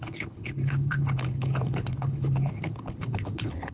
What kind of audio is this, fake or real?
fake